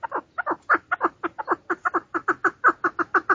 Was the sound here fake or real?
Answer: real